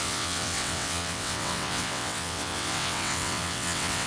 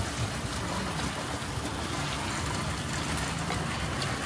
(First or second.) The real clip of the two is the second